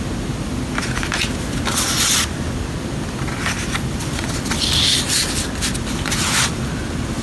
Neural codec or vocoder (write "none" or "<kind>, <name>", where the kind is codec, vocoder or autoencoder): none